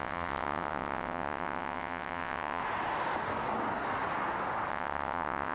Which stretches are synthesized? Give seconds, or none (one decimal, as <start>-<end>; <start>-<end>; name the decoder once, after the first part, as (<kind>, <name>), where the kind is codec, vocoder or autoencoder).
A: 0.0-2.6 (vocoder, WaveNeXt); 4.7-5.5